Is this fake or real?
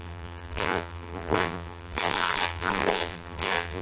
fake